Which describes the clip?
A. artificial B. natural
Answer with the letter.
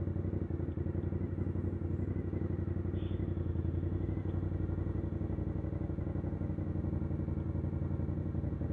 B